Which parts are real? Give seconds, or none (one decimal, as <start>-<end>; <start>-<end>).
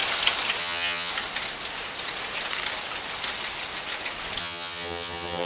0.0-0.6; 1.1-4.4